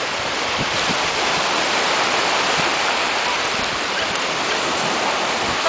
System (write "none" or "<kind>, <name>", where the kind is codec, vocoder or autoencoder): none